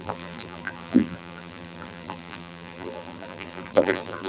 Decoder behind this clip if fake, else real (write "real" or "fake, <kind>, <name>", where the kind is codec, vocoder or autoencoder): fake, vocoder, BigVGAN v2